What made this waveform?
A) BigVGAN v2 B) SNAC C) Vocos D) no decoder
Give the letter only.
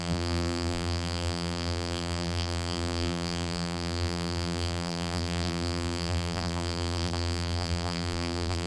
A